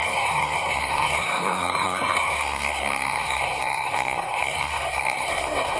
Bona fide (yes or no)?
no